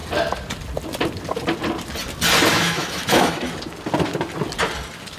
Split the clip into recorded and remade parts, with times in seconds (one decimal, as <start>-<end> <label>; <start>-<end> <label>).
0.0-2.5 recorded; 2.5-3.4 remade; 3.4-5.2 recorded